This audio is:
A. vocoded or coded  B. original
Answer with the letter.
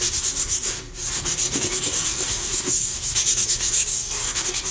A